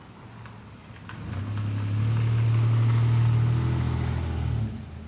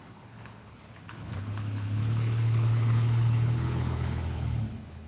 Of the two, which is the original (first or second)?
first